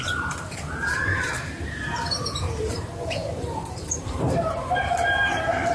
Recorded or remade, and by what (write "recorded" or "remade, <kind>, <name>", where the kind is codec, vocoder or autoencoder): remade, vocoder, BigVGAN v2